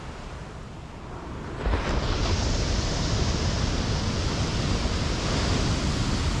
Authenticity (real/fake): real